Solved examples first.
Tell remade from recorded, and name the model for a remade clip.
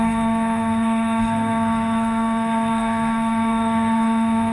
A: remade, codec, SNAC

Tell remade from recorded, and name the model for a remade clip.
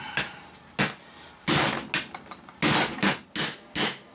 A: recorded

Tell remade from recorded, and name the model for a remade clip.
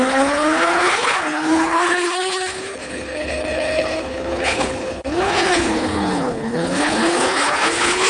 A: remade, codec, HILCodec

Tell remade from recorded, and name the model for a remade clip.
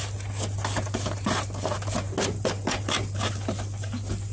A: recorded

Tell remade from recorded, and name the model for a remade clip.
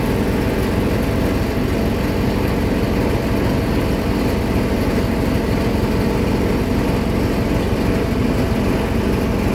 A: recorded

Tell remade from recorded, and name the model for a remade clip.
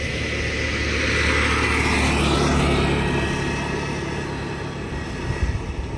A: recorded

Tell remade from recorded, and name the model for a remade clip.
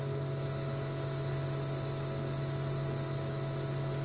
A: recorded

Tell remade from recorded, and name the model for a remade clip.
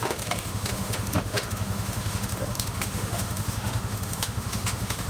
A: remade, autoencoder, DAC-VAE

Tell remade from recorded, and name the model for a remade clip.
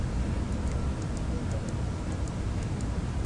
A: recorded